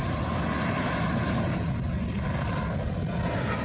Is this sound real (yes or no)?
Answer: yes